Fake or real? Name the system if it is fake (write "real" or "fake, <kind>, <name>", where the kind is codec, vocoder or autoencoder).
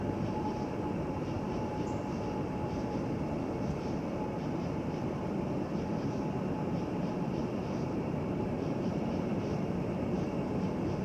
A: fake, vocoder, BigVGAN v2